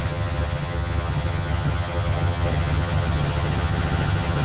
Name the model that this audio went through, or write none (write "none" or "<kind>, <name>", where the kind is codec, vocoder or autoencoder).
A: vocoder, HiFi-GAN